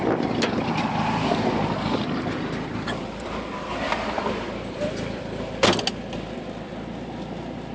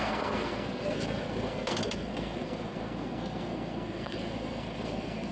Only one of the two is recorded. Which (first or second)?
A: first